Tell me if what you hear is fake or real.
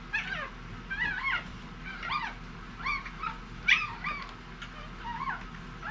real